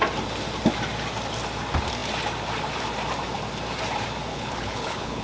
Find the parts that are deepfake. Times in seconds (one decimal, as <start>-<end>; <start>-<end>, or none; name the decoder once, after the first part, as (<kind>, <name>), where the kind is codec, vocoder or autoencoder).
4.3-5.2 (codec, HILCodec)

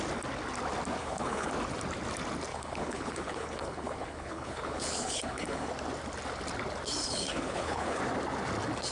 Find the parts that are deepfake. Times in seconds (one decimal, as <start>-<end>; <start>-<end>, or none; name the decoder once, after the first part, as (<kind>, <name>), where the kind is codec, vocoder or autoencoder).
1.0-1.5 (codec, HILCodec); 2.5-5.7; 7.0-8.0